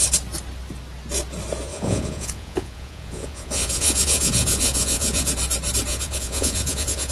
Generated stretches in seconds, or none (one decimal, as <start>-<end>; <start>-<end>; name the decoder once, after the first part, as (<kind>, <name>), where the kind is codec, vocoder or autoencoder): 1.7-5.3 (vocoder, Vocos); 5.9-7.1